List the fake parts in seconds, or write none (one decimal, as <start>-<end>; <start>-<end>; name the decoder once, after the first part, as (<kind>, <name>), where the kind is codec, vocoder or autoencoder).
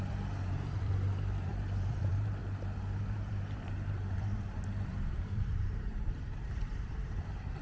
0.0-2.4 (vocoder, BigVGAN v2); 3.0-7.6